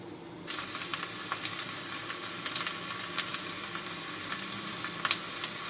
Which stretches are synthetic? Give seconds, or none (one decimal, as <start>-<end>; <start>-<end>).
0.0-0.9; 4.3-5.7

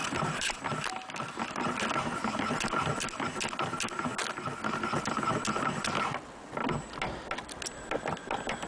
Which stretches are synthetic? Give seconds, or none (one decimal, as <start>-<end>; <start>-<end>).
0.0-0.6

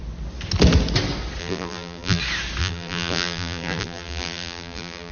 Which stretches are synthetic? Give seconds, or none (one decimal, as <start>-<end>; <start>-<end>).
1.4-2.2; 2.6-5.1

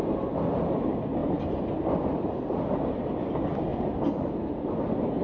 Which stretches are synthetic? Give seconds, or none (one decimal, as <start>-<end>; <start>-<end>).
none

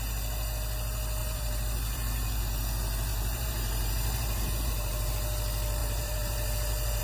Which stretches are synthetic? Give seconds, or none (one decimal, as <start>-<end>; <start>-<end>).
1.2-2.4; 3.1-5.1; 5.8-7.0

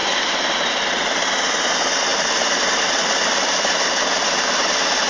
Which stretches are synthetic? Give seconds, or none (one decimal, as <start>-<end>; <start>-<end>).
0.0-1.0; 2.1-4.1